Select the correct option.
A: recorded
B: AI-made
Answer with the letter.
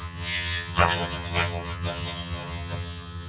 B